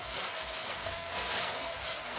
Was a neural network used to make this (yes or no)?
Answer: yes